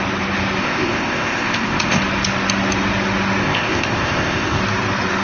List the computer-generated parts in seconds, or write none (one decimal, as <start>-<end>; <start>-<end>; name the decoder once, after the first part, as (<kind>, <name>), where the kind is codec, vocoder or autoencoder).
0.6-2.0 (codec, ZipCodec); 3.4-4.6